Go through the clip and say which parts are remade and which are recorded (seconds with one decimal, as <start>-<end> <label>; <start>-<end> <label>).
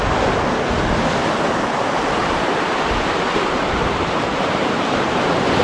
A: 0.0-2.2 recorded; 2.2-5.6 remade